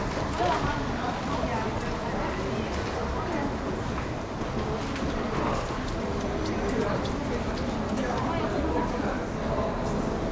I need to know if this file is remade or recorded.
recorded